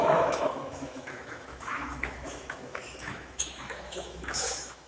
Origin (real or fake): fake